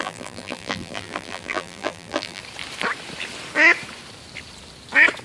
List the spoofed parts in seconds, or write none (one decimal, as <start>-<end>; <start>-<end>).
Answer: 0.0-2.4